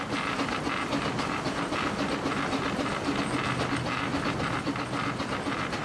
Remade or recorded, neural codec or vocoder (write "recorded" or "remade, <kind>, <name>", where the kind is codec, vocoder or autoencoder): recorded